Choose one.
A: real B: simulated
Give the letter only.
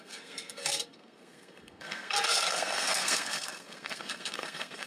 B